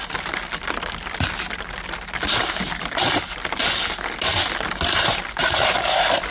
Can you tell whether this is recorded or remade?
recorded